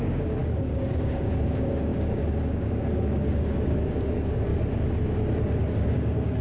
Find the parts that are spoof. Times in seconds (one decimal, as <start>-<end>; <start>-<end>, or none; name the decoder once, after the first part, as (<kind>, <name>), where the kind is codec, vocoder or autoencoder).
0.0-4.5 (codec, DAC); 5.7-6.4